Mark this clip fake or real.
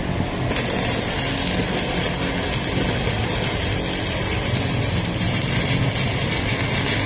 real